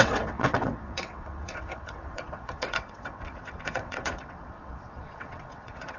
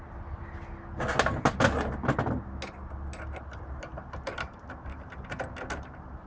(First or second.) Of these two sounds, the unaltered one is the second